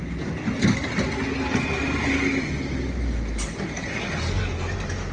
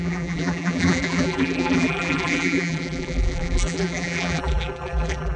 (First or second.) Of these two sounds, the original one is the first